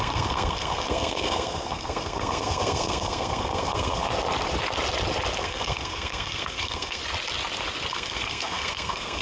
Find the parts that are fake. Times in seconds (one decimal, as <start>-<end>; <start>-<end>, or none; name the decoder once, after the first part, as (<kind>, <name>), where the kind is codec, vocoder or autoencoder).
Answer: 0.0-4.1 (codec, SNAC); 5.4-7.0; 7.9-9.2